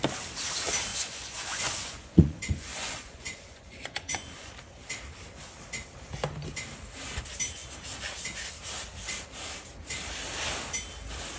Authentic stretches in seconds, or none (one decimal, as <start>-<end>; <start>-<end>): 0.0-0.9; 4.5-11.4